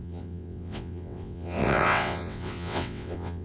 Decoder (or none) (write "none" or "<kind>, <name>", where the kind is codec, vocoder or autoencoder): vocoder, WaveNeXt